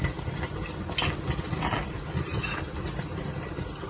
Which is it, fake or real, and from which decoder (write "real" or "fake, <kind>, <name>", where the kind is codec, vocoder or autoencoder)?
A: real